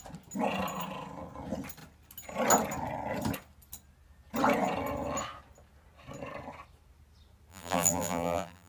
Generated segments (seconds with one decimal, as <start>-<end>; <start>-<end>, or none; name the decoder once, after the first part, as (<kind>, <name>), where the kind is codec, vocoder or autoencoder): 7.5-8.7 (vocoder, BigVGAN v2)